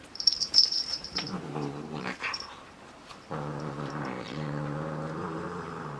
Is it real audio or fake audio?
fake